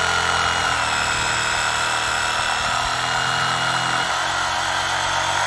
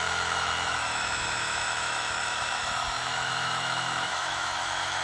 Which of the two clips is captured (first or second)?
first